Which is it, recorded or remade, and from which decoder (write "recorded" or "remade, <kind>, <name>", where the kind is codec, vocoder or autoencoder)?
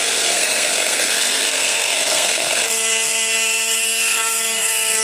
remade, codec, SNAC